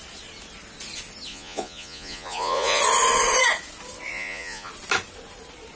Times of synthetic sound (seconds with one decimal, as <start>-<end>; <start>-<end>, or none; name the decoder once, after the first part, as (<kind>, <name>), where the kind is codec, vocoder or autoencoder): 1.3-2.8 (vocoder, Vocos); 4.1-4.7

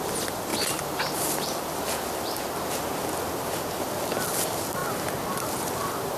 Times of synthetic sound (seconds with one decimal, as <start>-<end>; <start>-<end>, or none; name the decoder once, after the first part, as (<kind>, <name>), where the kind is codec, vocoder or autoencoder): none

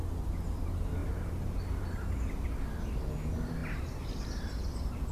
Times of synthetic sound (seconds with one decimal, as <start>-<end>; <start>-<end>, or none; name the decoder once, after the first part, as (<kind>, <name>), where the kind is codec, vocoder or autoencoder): none